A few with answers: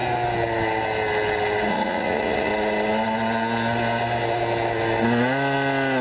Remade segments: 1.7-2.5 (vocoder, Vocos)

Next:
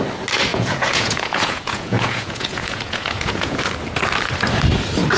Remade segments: 0.5-3.6 (vocoder, Vocos)

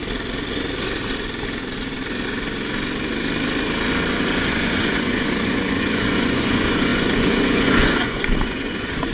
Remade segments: 4.1-9.1 (vocoder, Vocos)

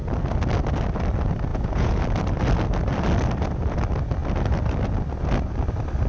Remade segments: 1.5-2.0 (vocoder, Vocos)

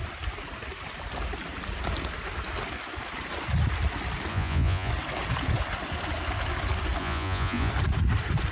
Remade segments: 4.3-4.9 (vocoder, Vocos); 7.0-7.7

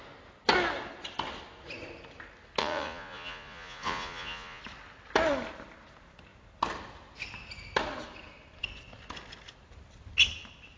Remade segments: 2.6-4.6 (vocoder, Vocos)

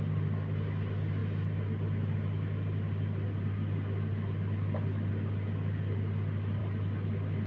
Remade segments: none

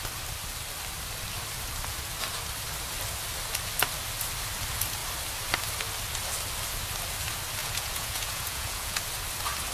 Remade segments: 7.6-9.0 (vocoder, Vocos)